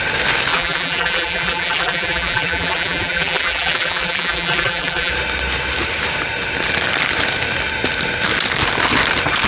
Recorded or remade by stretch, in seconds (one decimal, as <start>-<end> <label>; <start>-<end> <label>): 0.0-0.5 recorded; 0.5-5.1 remade; 5.1-9.5 recorded